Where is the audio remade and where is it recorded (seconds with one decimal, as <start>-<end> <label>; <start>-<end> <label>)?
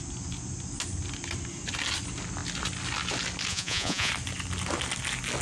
0.0-3.5 recorded; 3.5-4.1 remade; 4.1-5.4 recorded